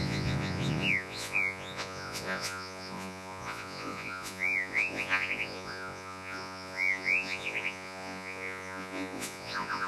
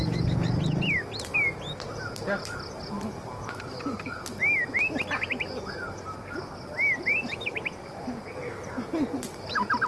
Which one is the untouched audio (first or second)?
second